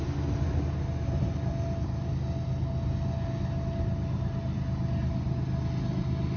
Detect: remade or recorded recorded